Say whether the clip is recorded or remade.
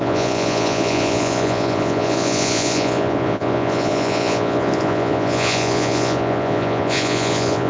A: remade